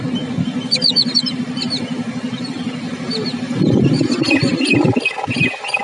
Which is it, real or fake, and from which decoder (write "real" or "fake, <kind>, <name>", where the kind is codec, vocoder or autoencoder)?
real